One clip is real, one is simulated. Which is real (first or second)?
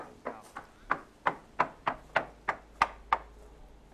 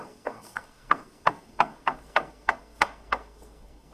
first